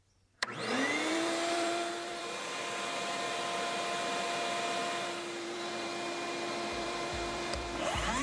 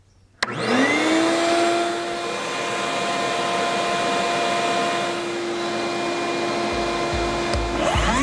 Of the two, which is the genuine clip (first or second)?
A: second